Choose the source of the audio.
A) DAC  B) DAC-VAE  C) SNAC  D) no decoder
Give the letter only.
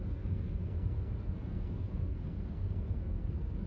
C